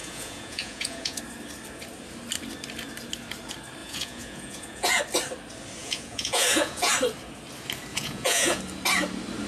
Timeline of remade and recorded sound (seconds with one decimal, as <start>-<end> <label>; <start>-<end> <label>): 0.0-1.2 remade; 1.2-3.8 recorded; 3.8-5.0 remade; 5.0-5.8 recorded; 5.8-6.9 remade; 6.9-7.9 recorded; 7.9-8.6 remade; 8.6-9.5 recorded